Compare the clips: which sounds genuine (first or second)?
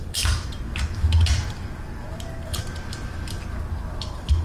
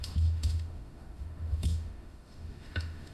first